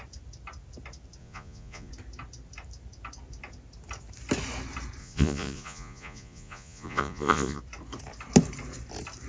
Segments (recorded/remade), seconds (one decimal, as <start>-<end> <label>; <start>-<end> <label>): 0.0-1.2 recorded; 1.2-1.9 remade; 1.9-5.0 recorded; 5.0-7.6 remade; 7.6-9.3 recorded